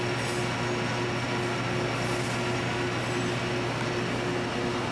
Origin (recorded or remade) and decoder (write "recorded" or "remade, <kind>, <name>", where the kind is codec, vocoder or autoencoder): recorded